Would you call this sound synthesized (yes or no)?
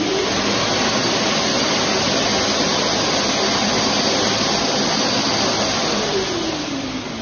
no